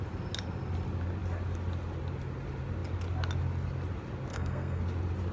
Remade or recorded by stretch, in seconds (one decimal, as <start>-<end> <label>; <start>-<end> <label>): 0.0-4.3 recorded; 4.3-4.8 remade; 4.8-5.3 recorded